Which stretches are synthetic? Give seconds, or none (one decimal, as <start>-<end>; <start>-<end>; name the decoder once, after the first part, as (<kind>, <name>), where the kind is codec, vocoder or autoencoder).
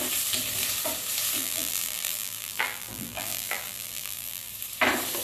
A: 1.4-4.5 (vocoder, BigVGAN v2)